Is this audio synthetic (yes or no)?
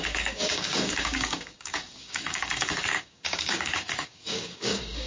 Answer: yes